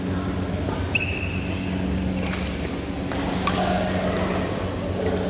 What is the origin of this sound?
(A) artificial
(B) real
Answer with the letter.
B